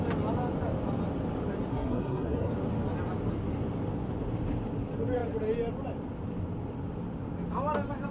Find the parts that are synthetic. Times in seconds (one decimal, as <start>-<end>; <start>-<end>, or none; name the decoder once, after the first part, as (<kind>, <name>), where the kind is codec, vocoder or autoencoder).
1.7-2.5 (codec, SNAC)